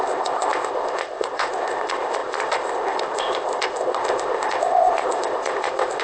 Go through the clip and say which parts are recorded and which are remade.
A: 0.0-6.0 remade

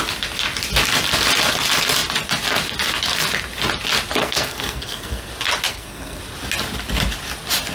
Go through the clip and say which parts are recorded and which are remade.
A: 0.0-4.2 recorded; 4.2-5.3 remade; 5.3-5.7 recorded; 5.7-6.2 remade; 6.2-7.7 recorded

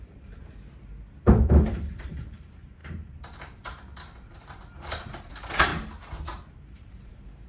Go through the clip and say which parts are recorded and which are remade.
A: 0.0-0.4 remade; 0.4-1.2 recorded; 1.2-5.7 remade; 5.7-6.6 recorded; 6.6-7.5 remade

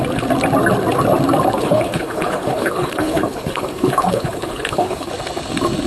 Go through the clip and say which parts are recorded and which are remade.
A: 0.0-1.6 recorded; 1.6-5.1 remade; 5.1-5.9 recorded

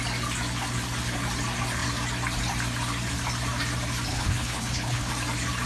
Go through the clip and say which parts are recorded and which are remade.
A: 0.0-4.1 recorded; 4.1-5.1 remade; 5.1-5.7 recorded

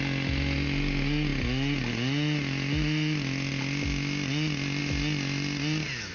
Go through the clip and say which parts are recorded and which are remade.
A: 0.0-6.1 recorded